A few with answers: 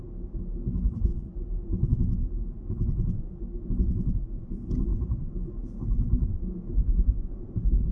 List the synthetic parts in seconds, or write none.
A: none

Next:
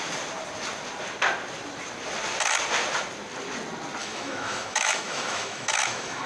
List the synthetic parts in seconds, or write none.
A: 4.0-6.3 (autoencoder, DAC-VAE)

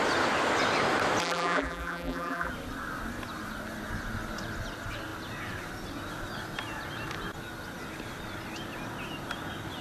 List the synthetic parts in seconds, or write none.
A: 1.2-2.5 (vocoder, BigVGAN v2)

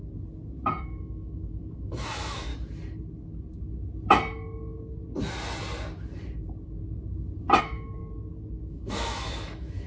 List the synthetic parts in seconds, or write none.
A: 0.8-2.5 (autoencoder, DAC-VAE); 7.6-8.0; 8.7-9.9

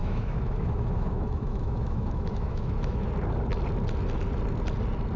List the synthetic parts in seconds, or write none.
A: 0.0-3.1 (autoencoder, DAC-VAE)

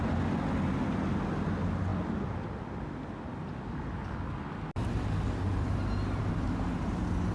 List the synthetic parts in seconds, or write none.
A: none

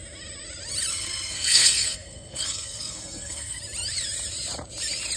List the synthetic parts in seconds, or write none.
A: 0.9-3.6 (codec, SNAC)